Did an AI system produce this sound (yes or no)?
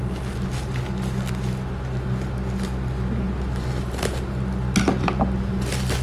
no